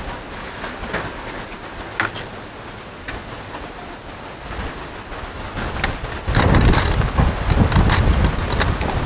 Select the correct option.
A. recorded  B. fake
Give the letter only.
A